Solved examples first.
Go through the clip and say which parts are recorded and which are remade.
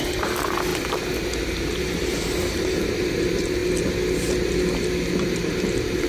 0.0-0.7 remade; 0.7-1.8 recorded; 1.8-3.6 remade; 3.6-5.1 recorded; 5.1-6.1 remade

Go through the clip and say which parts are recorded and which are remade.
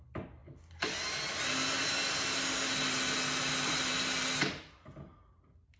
0.0-5.8 recorded